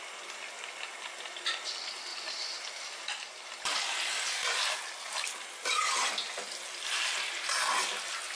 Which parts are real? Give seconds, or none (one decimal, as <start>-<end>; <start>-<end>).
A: 0.0-2.1; 4.9-8.4